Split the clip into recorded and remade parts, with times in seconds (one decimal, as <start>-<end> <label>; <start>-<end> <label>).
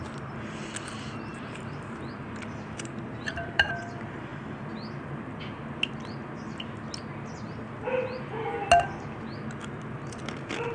0.0-1.3 recorded; 1.3-3.8 remade; 3.8-10.7 recorded